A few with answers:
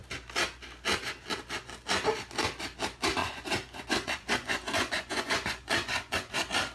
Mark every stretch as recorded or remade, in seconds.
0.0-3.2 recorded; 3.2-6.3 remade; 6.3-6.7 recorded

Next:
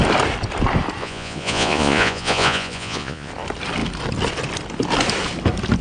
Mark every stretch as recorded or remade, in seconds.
0.0-1.0 recorded; 1.0-3.3 remade; 3.3-5.8 recorded

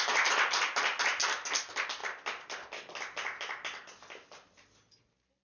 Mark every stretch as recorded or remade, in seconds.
0.0-5.4 recorded